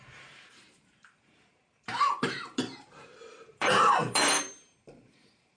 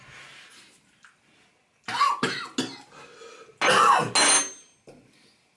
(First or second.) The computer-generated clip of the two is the first